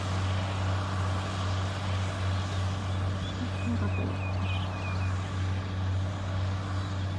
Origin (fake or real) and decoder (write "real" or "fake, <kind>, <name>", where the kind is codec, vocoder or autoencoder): real